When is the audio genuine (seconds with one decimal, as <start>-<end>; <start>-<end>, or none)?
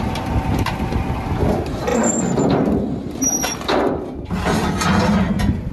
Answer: 0.0-5.7